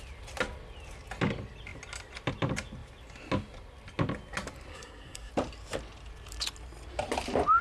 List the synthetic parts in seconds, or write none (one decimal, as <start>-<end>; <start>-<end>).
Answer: 4.7-5.3